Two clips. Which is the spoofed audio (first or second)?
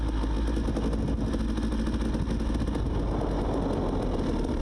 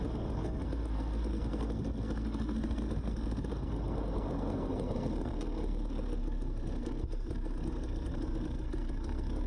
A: second